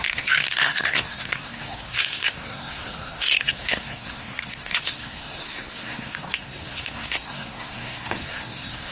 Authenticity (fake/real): fake